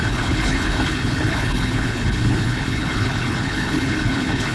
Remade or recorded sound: remade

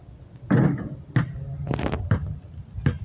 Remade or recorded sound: recorded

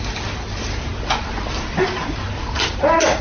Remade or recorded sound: recorded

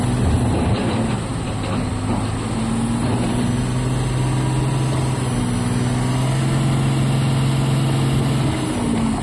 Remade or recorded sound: recorded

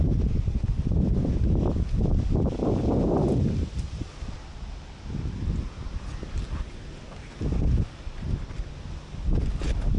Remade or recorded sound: recorded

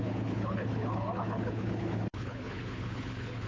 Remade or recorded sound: remade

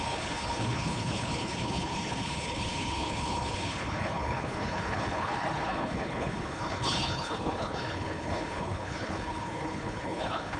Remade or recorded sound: remade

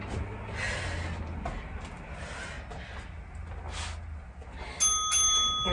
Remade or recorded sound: recorded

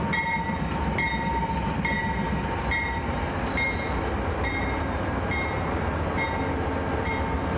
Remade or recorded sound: recorded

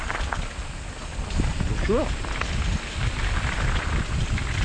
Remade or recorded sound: recorded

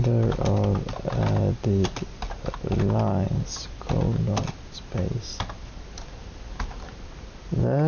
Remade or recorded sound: recorded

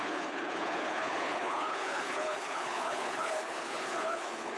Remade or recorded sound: remade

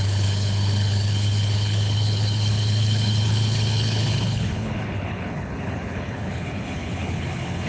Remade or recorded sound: remade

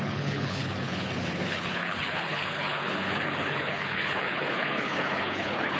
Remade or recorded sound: remade